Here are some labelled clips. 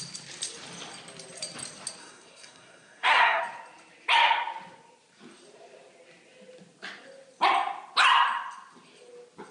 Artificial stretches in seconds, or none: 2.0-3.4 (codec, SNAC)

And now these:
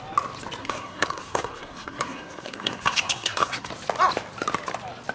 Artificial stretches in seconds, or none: 0.6-3.7 (codec, SNAC)

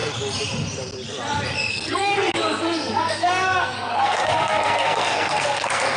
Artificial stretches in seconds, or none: 1.7-6.0 (codec, SNAC)

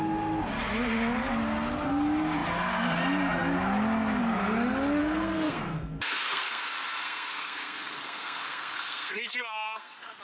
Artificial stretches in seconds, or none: 5.0-6.6 (codec, SNAC); 7.0-10.2

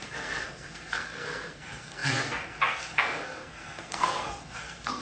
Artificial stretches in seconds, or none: 0.0-5.0 (codec, SNAC)

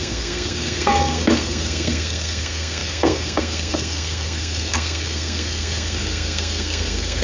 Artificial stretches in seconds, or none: 0.0-7.2 (codec, SNAC)

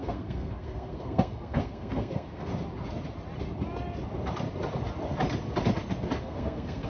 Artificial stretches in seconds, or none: 0.0-2.5 (codec, SNAC); 6.2-6.9

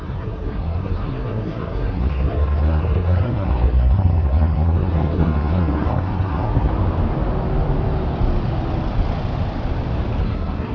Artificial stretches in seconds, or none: 0.0-6.7 (codec, SNAC); 10.2-10.7